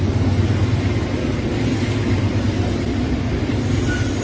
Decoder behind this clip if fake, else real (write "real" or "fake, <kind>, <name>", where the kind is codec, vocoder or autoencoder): real